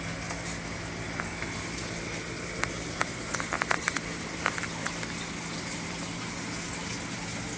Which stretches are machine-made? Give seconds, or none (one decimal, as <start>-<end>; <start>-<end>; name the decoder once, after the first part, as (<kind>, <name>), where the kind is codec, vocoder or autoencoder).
none